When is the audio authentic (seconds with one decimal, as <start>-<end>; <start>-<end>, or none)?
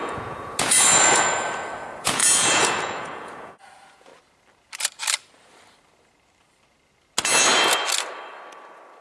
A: 4.1-9.0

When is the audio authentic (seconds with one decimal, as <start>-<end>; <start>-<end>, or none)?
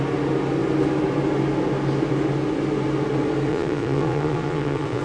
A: 0.0-3.5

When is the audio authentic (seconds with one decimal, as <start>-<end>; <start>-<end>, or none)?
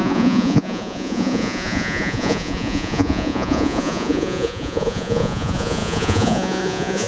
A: none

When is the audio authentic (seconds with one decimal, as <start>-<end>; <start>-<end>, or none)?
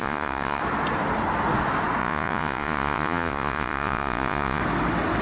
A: 0.6-2.0; 4.6-5.2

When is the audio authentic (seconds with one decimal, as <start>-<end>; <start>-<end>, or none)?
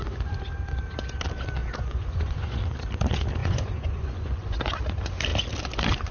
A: 0.0-1.6; 2.6-3.4; 4.7-6.1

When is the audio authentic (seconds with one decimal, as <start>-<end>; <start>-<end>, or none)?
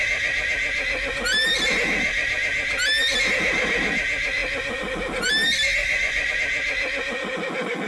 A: 0.0-5.8; 6.3-7.9